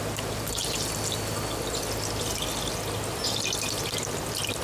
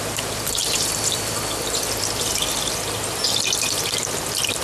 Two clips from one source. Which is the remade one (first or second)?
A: second